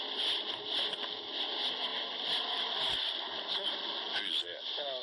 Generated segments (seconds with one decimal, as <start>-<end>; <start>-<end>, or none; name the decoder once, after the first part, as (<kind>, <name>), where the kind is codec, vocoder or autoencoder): none